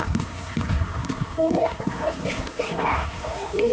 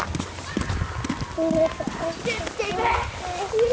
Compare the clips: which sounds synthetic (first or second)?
first